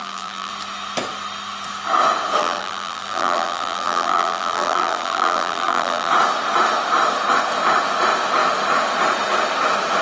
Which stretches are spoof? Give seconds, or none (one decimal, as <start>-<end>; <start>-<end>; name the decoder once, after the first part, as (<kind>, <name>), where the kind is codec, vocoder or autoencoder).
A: 0.0-0.5 (vocoder, BigVGAN v2); 2.4-6.1